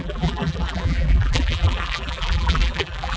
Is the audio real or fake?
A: fake